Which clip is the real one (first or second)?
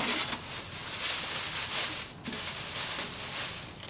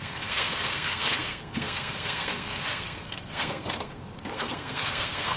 first